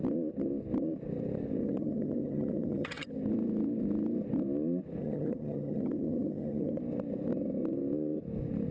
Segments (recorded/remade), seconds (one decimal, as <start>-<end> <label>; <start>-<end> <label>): 0.0-1.6 recorded; 1.6-3.1 remade; 3.1-5.0 recorded; 5.0-6.8 remade; 6.8-8.7 recorded